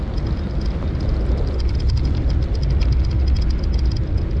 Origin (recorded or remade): recorded